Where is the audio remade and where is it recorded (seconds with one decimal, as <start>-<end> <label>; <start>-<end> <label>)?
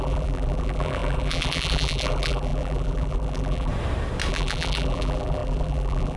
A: 0.0-3.7 remade; 3.7-4.3 recorded; 4.3-6.2 remade